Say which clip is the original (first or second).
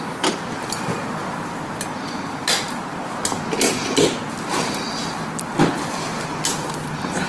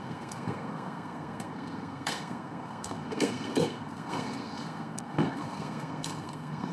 first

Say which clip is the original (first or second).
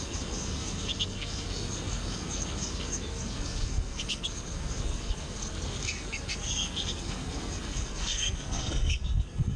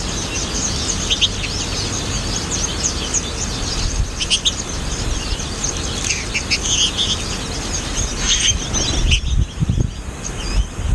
second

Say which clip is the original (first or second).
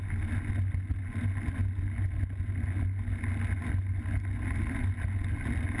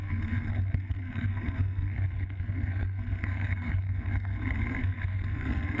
first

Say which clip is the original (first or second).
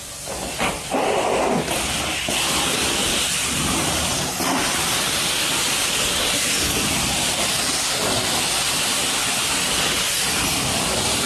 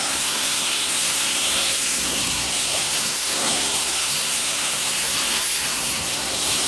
first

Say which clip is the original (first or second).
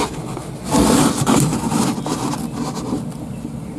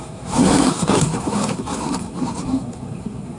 first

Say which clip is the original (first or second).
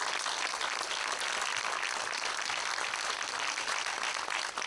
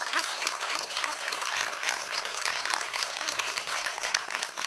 first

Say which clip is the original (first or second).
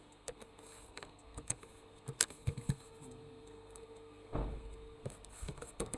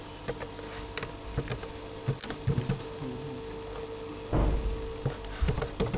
second